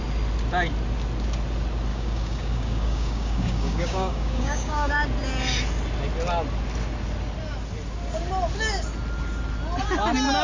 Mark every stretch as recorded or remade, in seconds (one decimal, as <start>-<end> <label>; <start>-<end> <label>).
0.0-1.9 recorded; 1.9-4.9 remade; 4.9-10.4 recorded